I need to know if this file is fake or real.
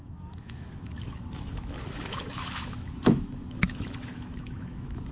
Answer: fake